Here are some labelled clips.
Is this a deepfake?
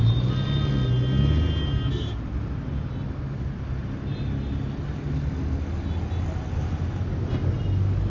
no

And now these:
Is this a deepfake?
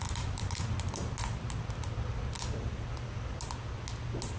no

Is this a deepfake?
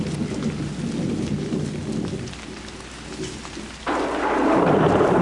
no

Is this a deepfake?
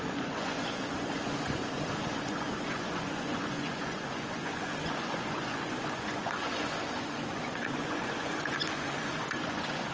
yes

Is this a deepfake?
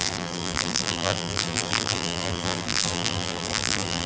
yes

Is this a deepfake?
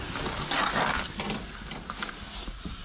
no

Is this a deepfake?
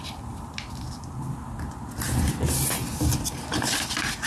no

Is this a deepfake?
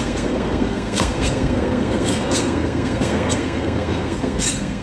yes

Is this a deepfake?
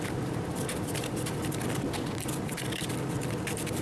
yes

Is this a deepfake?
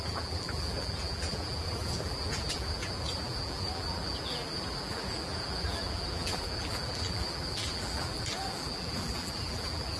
yes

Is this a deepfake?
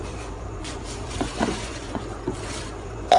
yes